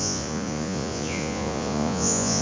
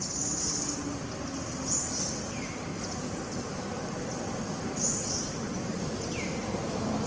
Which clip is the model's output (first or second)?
first